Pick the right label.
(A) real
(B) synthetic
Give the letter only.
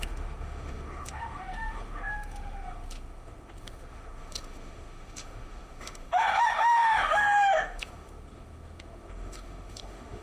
B